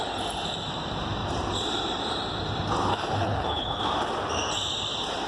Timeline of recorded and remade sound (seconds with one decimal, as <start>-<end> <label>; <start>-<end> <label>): 0.0-2.9 recorded; 2.9-3.8 remade; 3.8-5.3 recorded

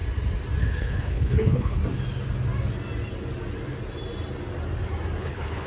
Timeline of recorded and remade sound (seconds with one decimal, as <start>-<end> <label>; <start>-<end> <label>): 0.0-0.6 recorded; 0.6-1.8 remade; 1.8-5.2 recorded; 5.2-5.7 remade

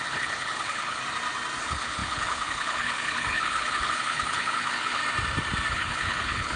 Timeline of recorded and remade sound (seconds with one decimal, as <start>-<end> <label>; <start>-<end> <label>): 0.0-1.0 remade; 1.0-1.6 recorded; 1.6-5.0 remade; 5.0-5.7 recorded; 5.7-6.6 remade

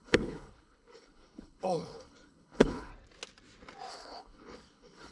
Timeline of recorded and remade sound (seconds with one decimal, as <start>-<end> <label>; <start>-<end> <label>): 0.0-2.9 remade; 2.9-3.9 recorded; 3.9-5.1 remade

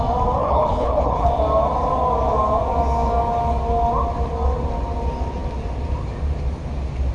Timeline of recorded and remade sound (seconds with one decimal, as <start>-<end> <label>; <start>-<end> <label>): 0.0-0.4 recorded; 0.4-1.3 remade; 1.3-7.1 recorded

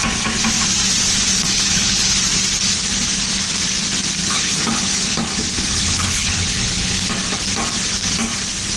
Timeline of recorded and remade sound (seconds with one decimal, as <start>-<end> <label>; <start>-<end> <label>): 0.0-1.3 recorded; 1.3-2.1 remade; 2.1-4.2 recorded; 4.2-7.1 remade; 7.1-8.8 recorded

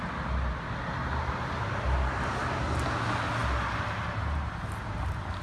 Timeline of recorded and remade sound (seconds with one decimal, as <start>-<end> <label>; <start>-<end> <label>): 0.0-5.4 recorded

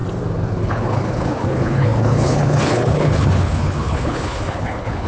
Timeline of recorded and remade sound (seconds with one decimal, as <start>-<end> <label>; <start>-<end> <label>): 0.0-0.6 recorded; 0.6-5.1 remade